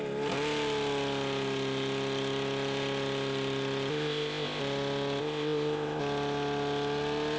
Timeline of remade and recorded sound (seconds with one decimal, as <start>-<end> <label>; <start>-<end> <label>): 0.0-3.9 recorded; 3.9-4.6 remade; 4.6-5.2 recorded; 5.2-6.0 remade; 6.0-7.4 recorded